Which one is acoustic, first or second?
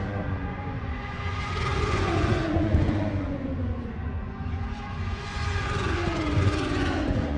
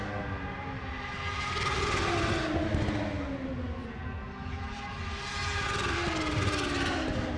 second